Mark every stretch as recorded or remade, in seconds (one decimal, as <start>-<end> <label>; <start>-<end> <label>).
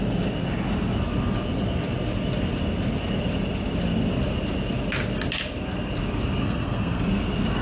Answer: 0.0-6.4 recorded; 6.4-7.0 remade; 7.0-7.6 recorded